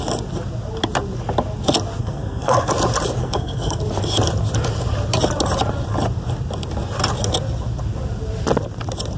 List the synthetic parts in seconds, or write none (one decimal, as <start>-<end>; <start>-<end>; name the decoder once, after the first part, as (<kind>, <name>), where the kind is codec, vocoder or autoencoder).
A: 2.0-2.7 (codec, SNAC); 3.2-3.8

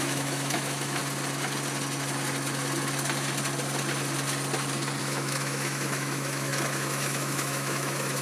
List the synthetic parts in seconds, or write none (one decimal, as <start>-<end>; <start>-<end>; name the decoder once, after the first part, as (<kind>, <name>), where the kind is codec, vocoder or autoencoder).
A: 0.0-1.0 (autoencoder, DAC-VAE); 5.0-8.2

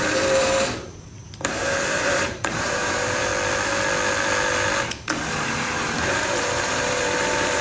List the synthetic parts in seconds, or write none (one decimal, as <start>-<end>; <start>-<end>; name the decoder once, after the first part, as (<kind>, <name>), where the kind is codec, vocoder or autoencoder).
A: 0.0-3.3 (vocoder, BigVGAN v2); 5.4-7.6

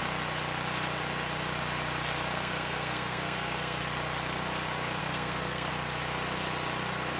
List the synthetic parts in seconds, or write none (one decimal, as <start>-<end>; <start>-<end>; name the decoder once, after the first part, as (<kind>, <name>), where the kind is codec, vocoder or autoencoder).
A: 2.3-3.8 (codec, SNAC); 5.0-5.7

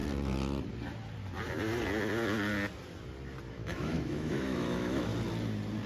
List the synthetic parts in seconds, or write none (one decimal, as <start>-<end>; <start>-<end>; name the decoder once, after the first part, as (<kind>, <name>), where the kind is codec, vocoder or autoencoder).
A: 3.5-5.1 (autoencoder, DAC-VAE)

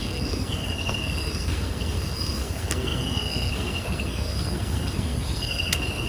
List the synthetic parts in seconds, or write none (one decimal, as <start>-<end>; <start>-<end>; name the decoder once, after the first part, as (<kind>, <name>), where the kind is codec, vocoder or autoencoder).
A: 0.0-6.1 (codec, SNAC)

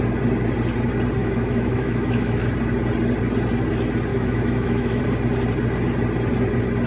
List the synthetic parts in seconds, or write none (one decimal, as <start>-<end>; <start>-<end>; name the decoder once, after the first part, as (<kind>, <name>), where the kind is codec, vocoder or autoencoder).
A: 1.2-2.4 (autoencoder, DAC-VAE); 4.1-5.0